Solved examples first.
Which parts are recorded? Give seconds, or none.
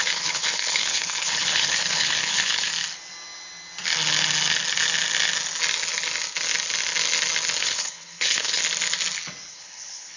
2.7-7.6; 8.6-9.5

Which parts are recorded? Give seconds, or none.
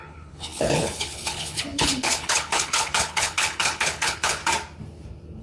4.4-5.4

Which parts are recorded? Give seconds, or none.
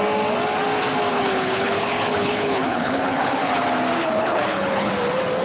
0.0-1.1; 3.6-4.0; 4.9-5.4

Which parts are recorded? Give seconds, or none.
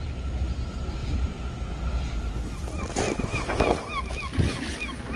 0.0-5.2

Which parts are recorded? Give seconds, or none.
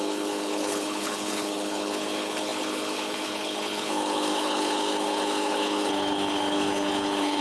none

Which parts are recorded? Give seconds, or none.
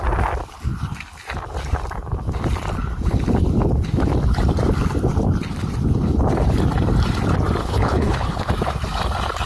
0.0-7.6; 8.5-9.5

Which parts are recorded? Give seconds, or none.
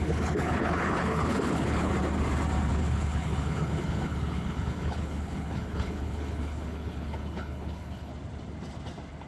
1.9-2.7; 8.1-9.3